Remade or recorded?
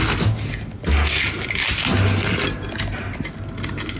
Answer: recorded